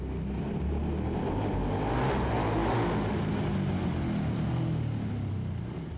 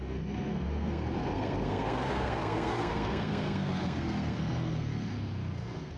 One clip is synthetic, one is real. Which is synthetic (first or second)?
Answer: second